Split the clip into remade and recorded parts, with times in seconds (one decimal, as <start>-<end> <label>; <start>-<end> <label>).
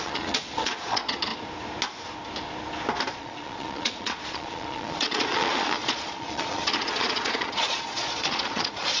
0.0-1.3 remade; 1.3-3.1 recorded; 3.1-9.0 remade